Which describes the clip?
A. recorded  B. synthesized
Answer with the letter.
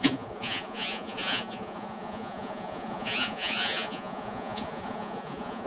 B